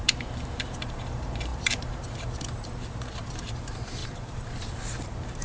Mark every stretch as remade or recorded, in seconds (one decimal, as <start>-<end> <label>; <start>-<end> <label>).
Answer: 0.0-5.4 remade